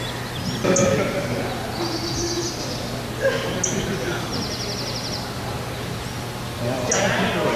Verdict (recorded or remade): recorded